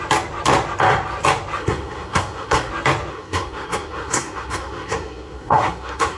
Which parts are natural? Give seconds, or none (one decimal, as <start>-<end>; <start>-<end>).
0.0-1.6; 2.7-3.1